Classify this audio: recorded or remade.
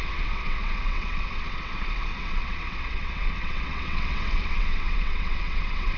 remade